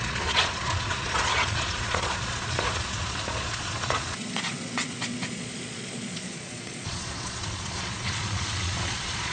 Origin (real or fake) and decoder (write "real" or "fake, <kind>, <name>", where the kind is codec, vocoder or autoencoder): fake, vocoder, Vocos